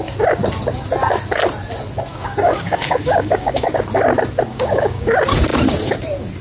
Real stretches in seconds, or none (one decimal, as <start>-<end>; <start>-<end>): 0.0-2.1; 3.7-4.5; 5.1-6.4